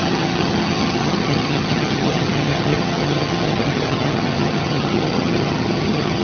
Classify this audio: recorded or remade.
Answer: remade